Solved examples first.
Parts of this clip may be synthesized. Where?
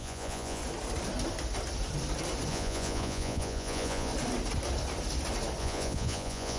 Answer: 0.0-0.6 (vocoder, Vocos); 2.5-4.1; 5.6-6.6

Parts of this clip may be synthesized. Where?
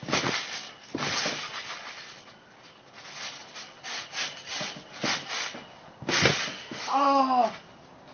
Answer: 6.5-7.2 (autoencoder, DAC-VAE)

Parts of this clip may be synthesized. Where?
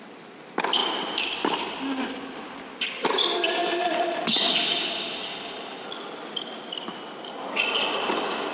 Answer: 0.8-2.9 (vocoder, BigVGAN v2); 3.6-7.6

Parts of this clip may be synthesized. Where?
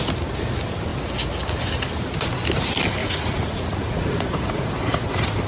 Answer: 3.0-4.7 (vocoder, Vocos)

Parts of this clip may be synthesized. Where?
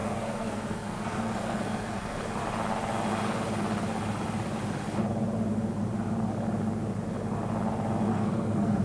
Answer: 0.0-2.2 (codec, SNAC); 8.1-8.8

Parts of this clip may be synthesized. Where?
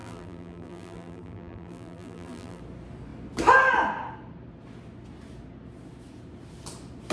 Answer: 0.0-2.6 (vocoder, BigVGAN v2)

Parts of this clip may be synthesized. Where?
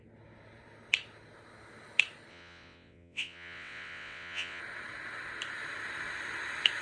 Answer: 2.3-4.6 (vocoder, WaveNeXt)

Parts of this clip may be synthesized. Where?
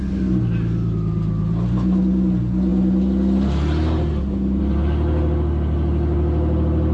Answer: none